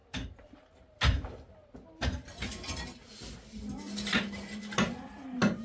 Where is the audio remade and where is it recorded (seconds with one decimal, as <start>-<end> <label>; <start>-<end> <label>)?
0.0-5.6 recorded